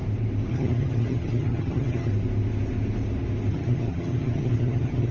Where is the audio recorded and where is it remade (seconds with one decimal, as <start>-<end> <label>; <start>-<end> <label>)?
0.0-0.5 recorded; 0.5-2.1 remade; 2.1-3.5 recorded; 3.5-5.1 remade